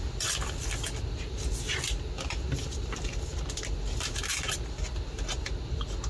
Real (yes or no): yes